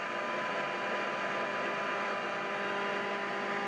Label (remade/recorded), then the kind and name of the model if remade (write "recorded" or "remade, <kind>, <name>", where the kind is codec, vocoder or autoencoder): recorded